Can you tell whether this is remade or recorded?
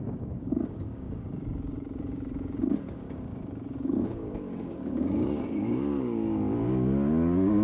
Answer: remade